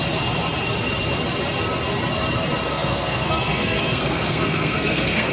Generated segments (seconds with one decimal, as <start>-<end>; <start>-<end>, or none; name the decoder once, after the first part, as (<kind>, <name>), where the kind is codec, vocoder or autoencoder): 2.7-5.3 (codec, SNAC)